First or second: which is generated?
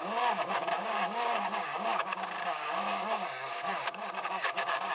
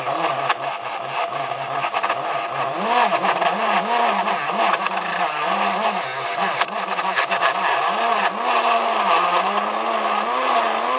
first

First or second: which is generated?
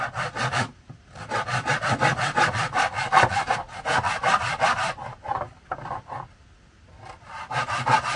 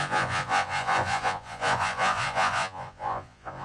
second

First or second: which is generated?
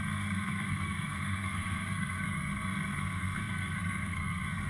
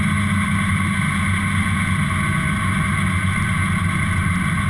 first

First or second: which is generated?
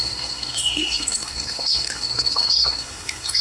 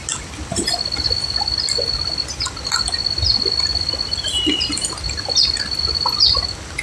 first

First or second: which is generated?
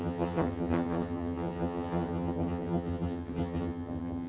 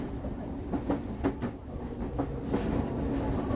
first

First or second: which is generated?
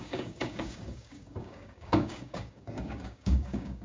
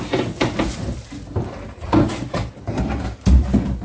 first